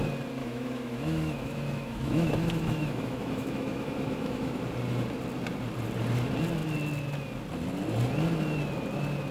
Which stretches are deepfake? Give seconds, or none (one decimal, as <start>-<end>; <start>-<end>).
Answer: 0.4-4.6